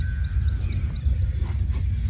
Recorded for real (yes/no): yes